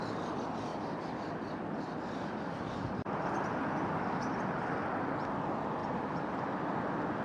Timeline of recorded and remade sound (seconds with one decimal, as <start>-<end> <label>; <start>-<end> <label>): 0.0-5.8 recorded; 5.8-6.4 remade; 6.4-7.2 recorded